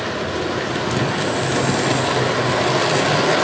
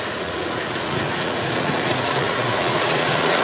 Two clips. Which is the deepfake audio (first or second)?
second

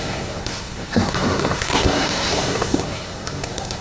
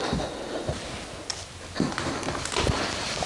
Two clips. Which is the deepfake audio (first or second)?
first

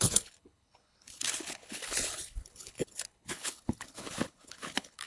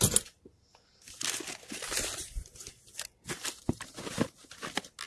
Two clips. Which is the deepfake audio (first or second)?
first